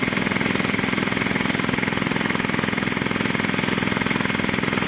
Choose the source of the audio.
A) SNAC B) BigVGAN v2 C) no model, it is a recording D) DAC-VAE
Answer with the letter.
C